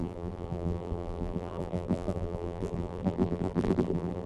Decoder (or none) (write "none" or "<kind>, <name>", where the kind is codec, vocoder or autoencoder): vocoder, BigVGAN v2